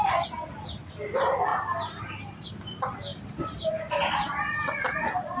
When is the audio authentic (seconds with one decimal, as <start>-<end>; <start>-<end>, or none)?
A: 0.0-1.5; 2.5-3.1; 3.7-5.4